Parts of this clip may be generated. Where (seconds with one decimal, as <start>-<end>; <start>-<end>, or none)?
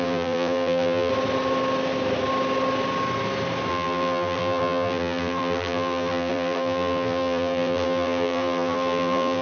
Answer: 0.0-1.1; 3.7-9.4